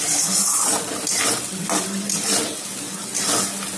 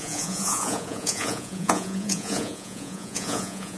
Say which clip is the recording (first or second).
first